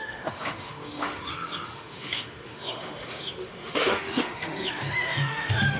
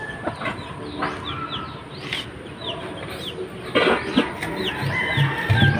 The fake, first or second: first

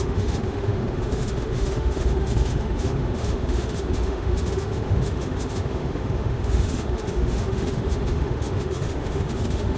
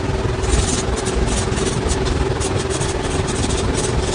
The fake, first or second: first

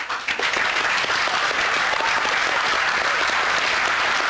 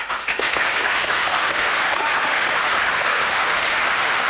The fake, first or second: second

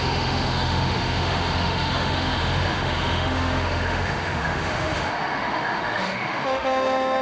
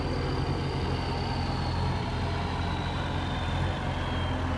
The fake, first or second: first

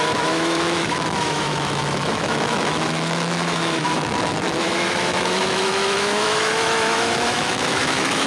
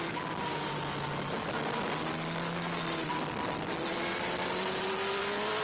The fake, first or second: first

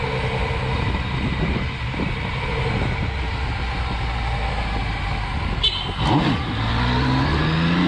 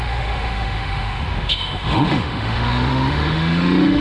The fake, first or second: second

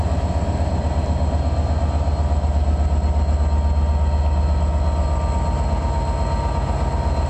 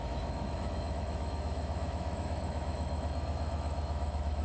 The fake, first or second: second